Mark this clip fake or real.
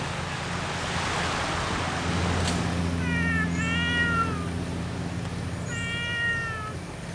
real